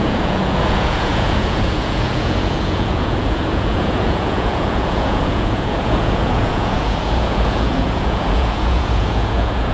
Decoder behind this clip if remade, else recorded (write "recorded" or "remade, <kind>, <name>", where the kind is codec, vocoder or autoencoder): remade, vocoder, Vocos